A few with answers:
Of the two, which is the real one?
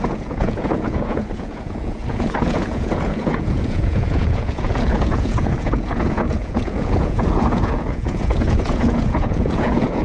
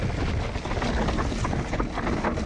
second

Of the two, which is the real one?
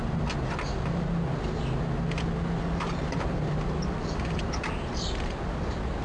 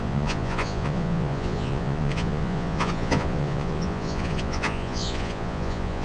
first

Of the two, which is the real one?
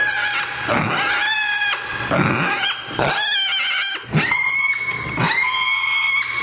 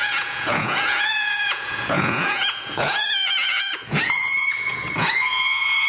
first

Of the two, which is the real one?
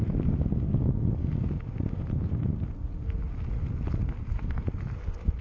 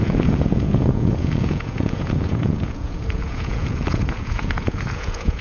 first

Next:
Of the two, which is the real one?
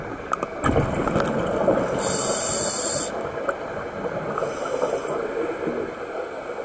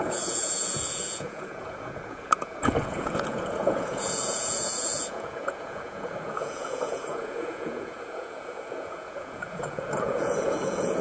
first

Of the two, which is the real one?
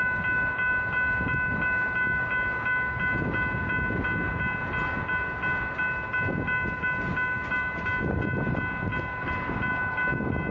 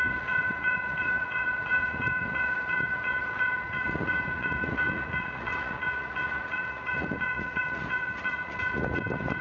first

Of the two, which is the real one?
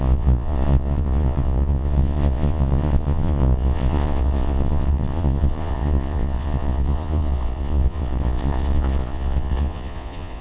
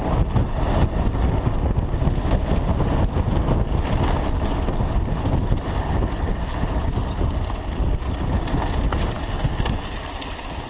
second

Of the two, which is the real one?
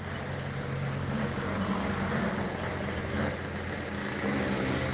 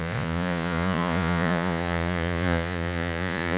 first